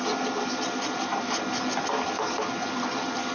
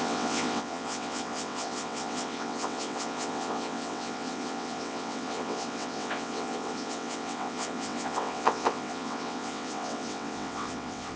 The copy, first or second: second